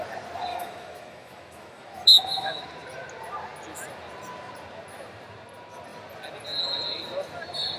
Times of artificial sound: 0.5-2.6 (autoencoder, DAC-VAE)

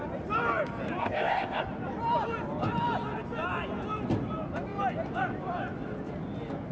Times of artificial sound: 1.0-1.6 (codec, ZipCodec)

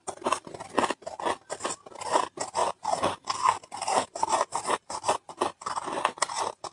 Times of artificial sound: 2.6-5.3 (vocoder, BigVGAN v2)

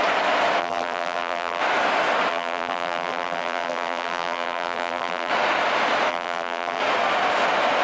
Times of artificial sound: 0.6-1.6 (vocoder, BigVGAN v2); 2.3-5.3; 6.1-6.8

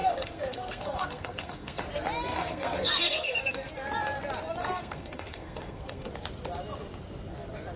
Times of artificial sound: 0.0-1.9 (codec, SNAC); 2.3-3.7; 4.6-6.1

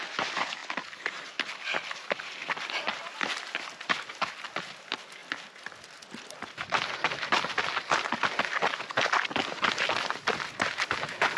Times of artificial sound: 2.9-4.1 (vocoder, BigVGAN v2); 5.2-7.5